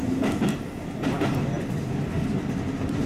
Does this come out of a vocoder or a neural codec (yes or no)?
no